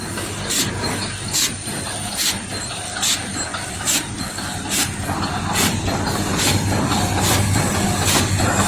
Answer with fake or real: real